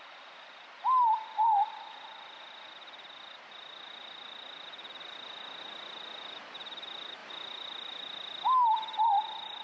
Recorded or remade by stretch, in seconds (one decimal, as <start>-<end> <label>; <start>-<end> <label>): 0.0-9.6 recorded